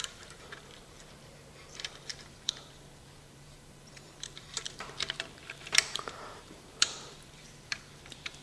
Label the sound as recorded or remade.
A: remade